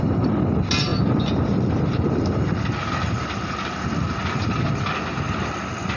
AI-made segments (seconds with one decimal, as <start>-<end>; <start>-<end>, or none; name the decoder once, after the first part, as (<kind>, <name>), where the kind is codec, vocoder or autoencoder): none